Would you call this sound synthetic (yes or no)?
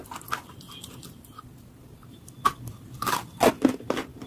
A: no